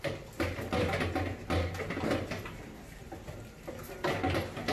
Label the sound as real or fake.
real